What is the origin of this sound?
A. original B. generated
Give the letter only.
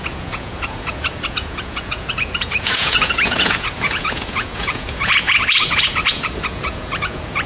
B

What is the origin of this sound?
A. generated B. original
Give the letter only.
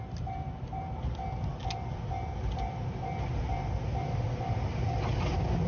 B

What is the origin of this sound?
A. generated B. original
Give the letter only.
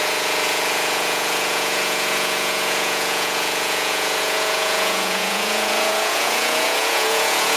A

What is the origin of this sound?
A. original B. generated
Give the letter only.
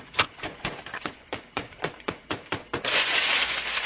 B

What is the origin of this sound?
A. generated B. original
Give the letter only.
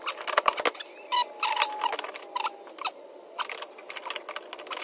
B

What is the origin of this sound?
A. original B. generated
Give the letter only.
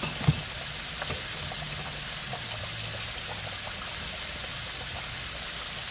A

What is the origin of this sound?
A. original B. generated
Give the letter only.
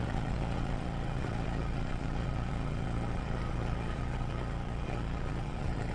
B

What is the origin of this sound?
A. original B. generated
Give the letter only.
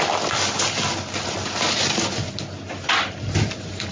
A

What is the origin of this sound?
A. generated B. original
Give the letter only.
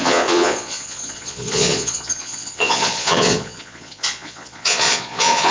A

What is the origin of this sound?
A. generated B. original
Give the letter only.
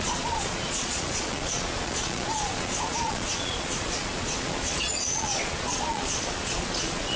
A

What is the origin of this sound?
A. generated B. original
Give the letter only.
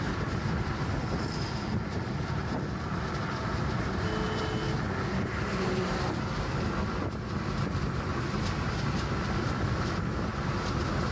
B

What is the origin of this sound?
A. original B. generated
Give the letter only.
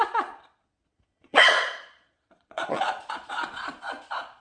B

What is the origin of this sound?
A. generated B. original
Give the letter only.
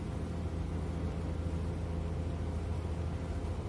B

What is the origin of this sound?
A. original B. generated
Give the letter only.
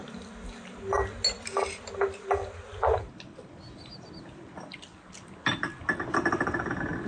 A